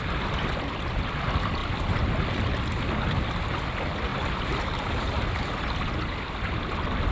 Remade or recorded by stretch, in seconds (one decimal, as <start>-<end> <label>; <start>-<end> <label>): 0.0-7.1 recorded